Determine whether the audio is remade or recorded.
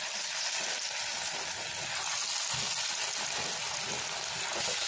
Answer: recorded